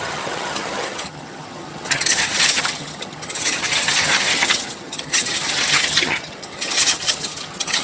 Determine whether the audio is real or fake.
fake